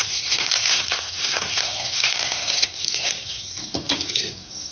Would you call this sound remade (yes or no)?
yes